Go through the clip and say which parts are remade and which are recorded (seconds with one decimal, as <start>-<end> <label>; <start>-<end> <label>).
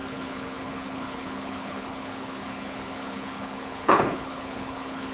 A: 0.0-5.1 remade